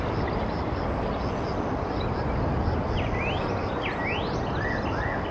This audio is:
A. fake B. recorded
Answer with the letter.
B